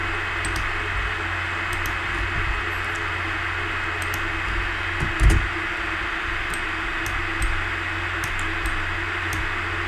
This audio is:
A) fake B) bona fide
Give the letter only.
B